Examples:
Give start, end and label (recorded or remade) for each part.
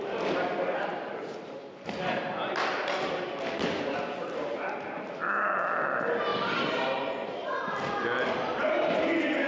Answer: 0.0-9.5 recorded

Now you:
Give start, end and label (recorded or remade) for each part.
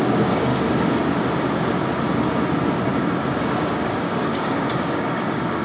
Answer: 0.0-0.5 remade; 0.5-3.4 recorded; 3.4-5.6 remade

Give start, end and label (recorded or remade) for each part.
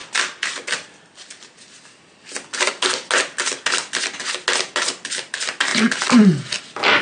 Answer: 0.0-7.0 recorded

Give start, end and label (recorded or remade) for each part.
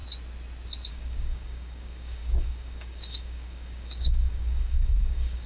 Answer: 0.0-0.9 recorded; 0.9-5.5 remade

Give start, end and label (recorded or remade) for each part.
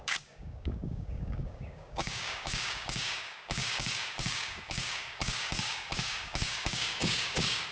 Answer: 0.0-7.7 remade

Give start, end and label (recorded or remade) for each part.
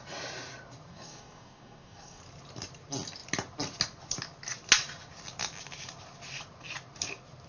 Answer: 0.0-0.9 recorded; 0.9-2.2 remade; 2.2-7.5 recorded